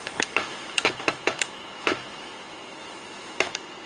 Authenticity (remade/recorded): remade